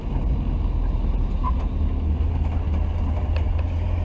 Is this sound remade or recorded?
recorded